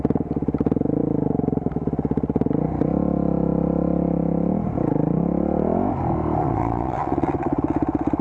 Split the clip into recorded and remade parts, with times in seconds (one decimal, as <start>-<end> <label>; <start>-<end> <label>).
0.0-6.4 recorded; 6.4-7.6 remade; 7.6-8.2 recorded